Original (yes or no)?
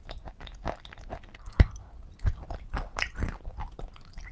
yes